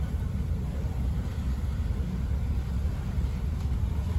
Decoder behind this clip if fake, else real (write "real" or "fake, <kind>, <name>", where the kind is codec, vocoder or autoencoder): real